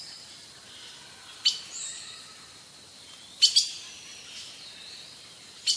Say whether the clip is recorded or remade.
recorded